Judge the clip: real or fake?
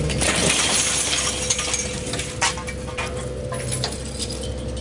real